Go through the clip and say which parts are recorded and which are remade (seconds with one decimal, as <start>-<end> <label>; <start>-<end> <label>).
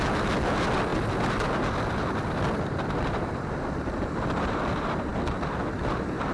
0.0-6.3 recorded